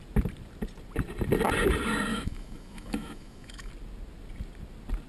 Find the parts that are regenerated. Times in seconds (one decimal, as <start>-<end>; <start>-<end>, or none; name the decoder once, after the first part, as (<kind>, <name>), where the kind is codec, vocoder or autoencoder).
2.1-3.7 (autoencoder, DAC-VAE)